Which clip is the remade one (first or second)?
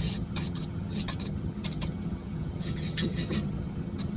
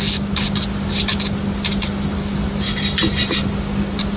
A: first